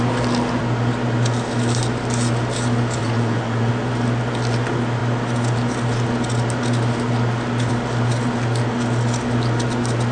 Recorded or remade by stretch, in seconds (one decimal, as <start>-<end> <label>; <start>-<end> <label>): 0.0-3.0 recorded; 3.0-3.7 remade; 3.7-10.1 recorded